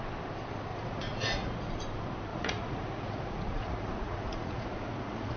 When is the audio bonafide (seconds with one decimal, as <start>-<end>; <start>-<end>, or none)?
0.0-0.7; 1.8-2.3